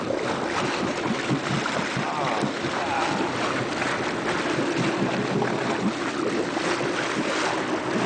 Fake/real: real